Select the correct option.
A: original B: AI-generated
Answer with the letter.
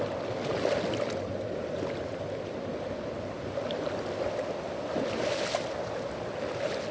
A